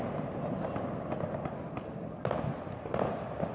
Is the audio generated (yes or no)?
no